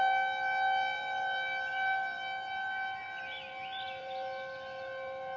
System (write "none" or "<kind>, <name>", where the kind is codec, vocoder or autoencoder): none